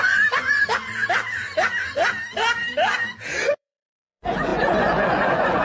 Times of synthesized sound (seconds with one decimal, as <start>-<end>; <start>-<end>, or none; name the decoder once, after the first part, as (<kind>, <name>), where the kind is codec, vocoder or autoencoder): 0.0-0.6 (vocoder, Vocos); 3.4-5.6